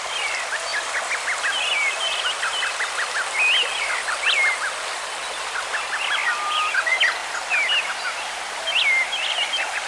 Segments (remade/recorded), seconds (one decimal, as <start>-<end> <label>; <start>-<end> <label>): 0.0-9.9 recorded